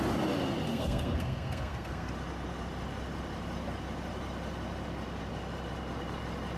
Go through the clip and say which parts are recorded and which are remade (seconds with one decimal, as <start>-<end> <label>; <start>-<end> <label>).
0.0-0.7 recorded; 0.7-2.1 remade; 2.1-6.6 recorded